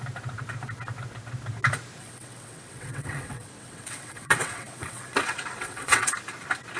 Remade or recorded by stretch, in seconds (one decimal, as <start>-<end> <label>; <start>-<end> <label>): 0.0-2.0 recorded; 2.0-6.1 remade; 6.1-6.8 recorded